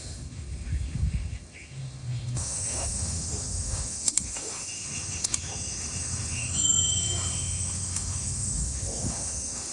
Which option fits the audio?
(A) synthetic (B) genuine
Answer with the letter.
A